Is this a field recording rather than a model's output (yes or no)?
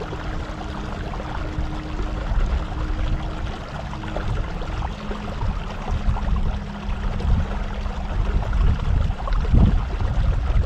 yes